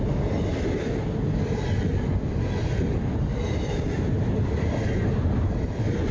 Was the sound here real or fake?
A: real